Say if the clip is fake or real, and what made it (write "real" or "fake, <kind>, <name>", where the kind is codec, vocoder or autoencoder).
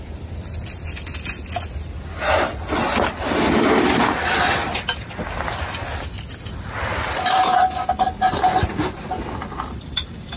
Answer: real